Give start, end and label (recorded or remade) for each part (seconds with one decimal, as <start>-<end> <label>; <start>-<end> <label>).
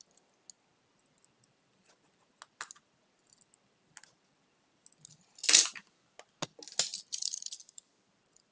0.0-6.9 recorded; 6.9-8.5 remade